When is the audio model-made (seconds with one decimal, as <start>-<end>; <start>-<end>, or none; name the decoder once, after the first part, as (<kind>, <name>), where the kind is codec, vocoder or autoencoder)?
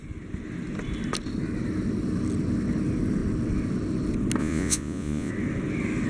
4.4-5.3 (vocoder, Vocos)